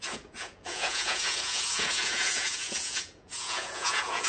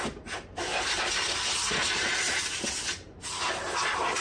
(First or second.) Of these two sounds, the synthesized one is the first